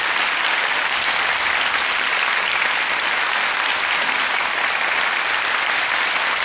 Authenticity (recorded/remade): remade